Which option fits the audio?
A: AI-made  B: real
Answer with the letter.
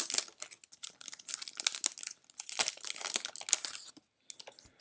B